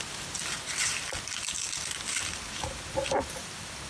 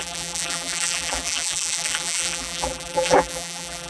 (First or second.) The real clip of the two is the first